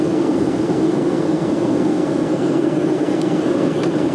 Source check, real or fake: fake